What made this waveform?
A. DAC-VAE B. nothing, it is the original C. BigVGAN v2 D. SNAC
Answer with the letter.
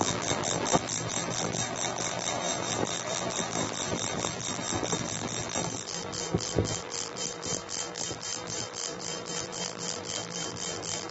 C